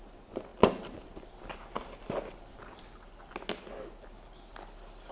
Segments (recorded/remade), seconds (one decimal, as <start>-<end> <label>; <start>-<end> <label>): 0.0-5.1 recorded